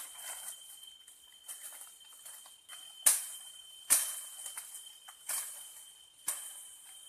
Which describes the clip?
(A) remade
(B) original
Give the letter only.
B